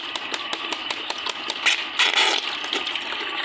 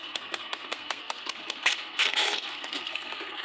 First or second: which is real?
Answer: first